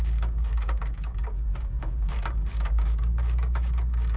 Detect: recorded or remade remade